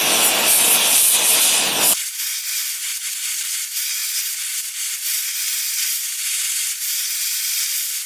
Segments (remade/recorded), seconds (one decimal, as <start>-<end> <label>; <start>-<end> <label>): 0.0-8.1 recorded